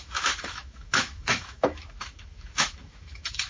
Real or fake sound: fake